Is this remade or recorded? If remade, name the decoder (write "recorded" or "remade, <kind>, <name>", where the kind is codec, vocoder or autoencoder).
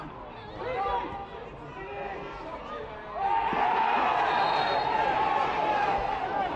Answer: recorded